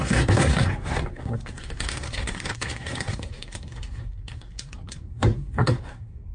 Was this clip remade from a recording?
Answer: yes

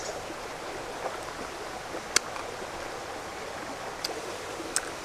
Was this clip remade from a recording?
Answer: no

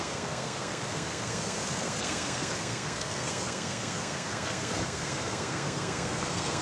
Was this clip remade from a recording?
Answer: yes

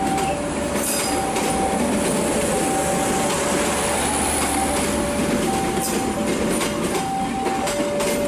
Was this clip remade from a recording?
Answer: no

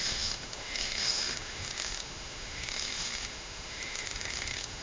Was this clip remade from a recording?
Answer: yes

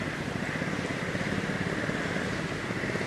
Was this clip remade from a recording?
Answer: no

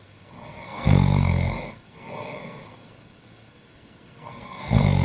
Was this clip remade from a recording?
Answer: yes